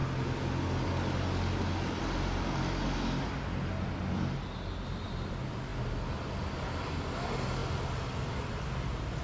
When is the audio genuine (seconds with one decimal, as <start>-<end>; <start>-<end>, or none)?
0.0-9.2